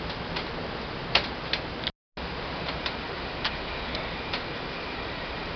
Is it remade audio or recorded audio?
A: recorded